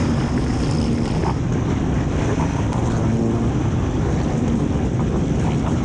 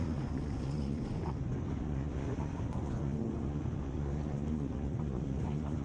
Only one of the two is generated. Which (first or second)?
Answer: second